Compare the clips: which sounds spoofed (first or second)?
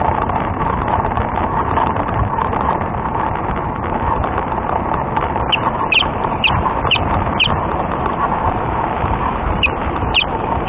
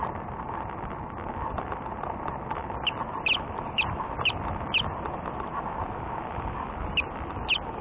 first